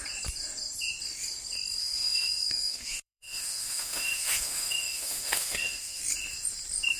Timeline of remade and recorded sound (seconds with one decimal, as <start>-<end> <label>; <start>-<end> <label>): 0.0-1.8 recorded; 1.8-6.0 remade; 6.0-7.0 recorded